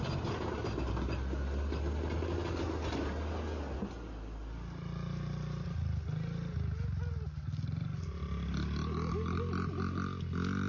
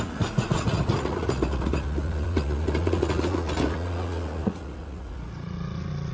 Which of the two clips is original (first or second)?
first